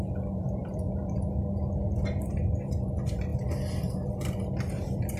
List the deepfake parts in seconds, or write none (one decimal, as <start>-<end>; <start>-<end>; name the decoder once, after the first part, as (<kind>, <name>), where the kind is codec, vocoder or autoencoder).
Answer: none